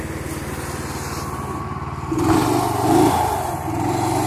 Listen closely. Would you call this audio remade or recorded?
recorded